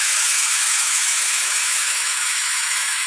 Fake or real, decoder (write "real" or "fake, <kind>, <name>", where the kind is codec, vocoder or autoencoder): fake, autoencoder, DAC-VAE